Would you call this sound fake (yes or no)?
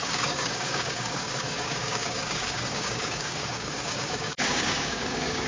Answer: yes